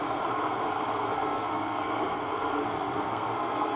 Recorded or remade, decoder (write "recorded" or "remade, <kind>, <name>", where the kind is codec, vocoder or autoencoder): remade, codec, SNAC